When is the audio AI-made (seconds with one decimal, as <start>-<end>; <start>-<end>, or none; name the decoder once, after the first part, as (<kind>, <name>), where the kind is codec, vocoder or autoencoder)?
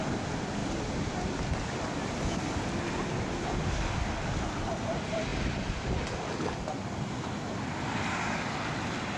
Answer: none